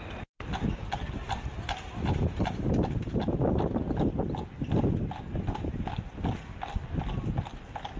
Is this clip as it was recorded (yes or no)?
yes